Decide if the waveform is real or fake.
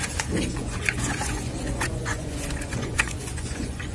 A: fake